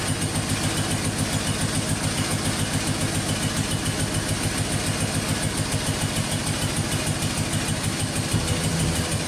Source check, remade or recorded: recorded